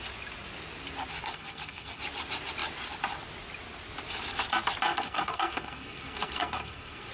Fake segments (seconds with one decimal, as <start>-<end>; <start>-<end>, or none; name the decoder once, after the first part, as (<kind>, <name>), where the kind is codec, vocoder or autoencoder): 1.3-2.0 (codec, SNAC); 4.9-7.1